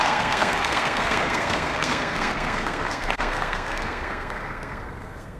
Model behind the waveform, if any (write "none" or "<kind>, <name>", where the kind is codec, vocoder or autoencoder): codec, SNAC